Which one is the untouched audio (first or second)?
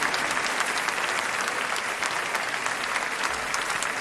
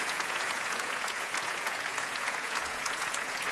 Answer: first